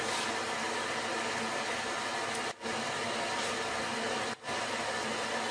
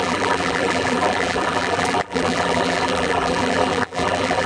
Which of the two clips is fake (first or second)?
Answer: second